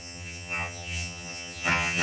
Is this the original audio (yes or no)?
no